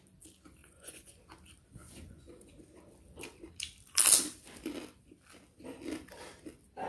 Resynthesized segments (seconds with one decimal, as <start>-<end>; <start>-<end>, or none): 0.6-1.2; 1.8-2.5